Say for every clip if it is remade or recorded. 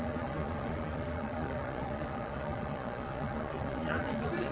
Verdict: remade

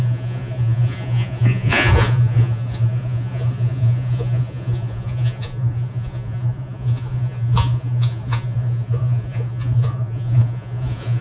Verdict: remade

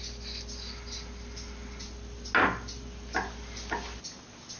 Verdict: recorded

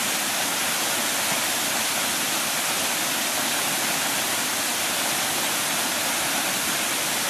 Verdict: recorded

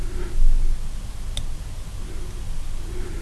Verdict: recorded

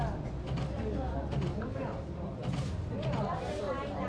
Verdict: recorded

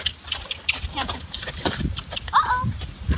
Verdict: recorded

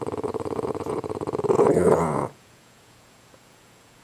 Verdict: remade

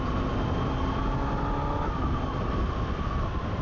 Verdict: recorded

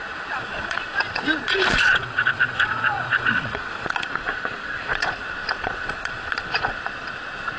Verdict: remade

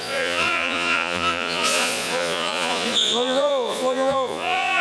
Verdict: remade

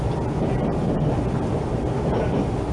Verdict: recorded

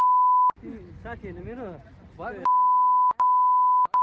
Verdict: recorded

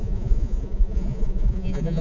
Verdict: remade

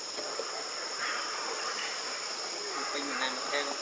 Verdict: recorded